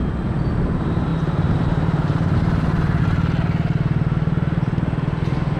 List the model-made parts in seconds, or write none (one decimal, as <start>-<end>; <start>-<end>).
1.1-3.0